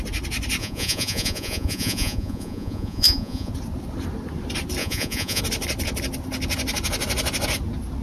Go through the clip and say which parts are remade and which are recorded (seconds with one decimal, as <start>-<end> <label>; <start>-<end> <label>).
0.0-0.6 recorded; 0.6-3.5 remade; 3.5-4.8 recorded; 4.8-5.4 remade; 5.4-8.0 recorded